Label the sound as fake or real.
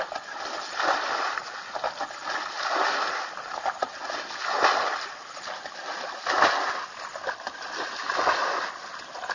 real